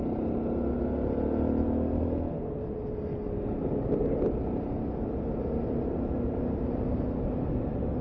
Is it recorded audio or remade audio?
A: recorded